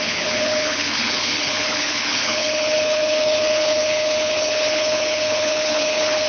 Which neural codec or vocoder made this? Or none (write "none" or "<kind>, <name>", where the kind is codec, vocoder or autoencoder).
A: codec, HILCodec